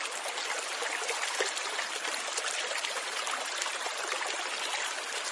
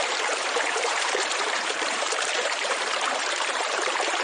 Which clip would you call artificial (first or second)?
second